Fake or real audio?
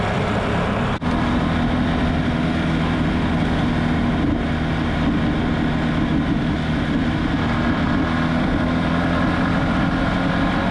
real